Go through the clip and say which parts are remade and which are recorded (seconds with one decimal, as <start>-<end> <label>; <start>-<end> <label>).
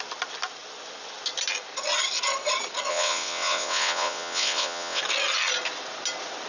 0.0-2.9 recorded; 2.9-5.0 remade; 5.0-6.5 recorded